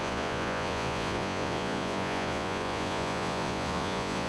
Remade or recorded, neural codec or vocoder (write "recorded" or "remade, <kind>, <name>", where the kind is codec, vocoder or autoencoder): remade, vocoder, Vocos